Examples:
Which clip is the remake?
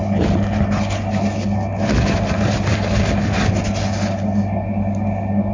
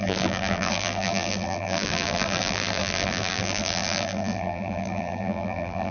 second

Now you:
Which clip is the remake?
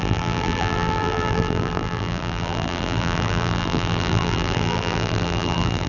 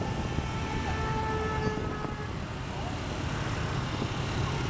first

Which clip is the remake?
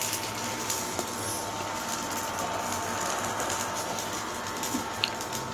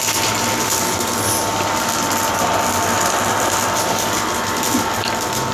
second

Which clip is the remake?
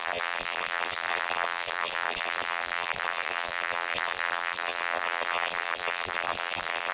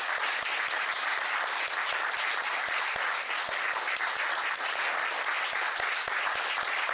first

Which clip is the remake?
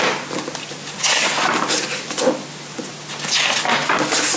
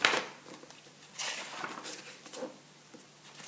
second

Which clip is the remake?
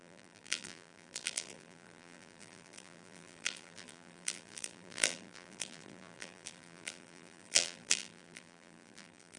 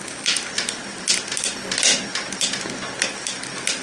first